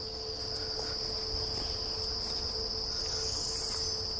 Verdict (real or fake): real